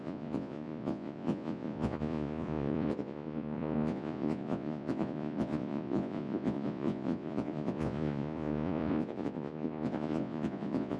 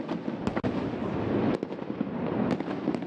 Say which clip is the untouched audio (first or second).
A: second